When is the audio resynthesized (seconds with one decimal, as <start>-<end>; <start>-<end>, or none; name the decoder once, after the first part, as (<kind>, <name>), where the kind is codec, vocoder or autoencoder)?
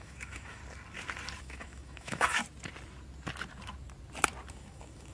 0.0-0.6 (autoencoder, DAC-VAE); 1.4-2.4; 4.5-5.1